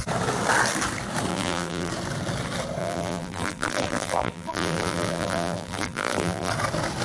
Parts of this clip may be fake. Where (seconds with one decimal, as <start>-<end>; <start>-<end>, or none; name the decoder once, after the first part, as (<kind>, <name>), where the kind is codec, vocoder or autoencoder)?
1.3-1.9 (vocoder, BigVGAN v2); 2.8-6.5